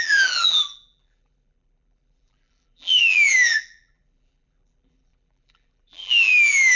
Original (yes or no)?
no